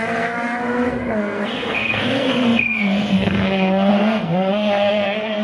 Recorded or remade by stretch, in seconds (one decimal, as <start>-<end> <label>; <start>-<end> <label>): 0.0-5.4 remade

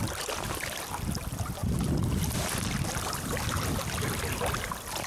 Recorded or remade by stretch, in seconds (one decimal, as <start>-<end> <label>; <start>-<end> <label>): 0.0-5.1 recorded

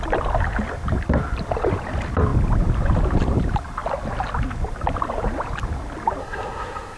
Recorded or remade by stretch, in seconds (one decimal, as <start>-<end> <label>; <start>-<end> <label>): 0.0-6.2 recorded; 6.2-7.0 remade

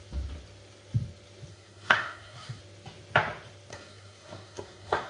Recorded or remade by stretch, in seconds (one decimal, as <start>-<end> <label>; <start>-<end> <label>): 0.0-1.5 recorded; 1.5-2.6 remade; 2.6-3.7 recorded; 3.7-5.1 remade

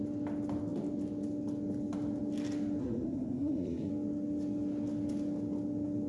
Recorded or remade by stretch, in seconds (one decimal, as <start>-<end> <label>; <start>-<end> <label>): 0.0-2.8 recorded; 2.8-3.9 remade; 3.9-6.1 recorded